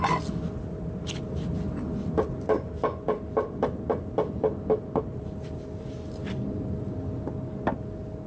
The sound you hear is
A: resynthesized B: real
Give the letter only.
B